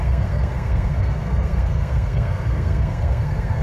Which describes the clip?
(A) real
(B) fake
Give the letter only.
B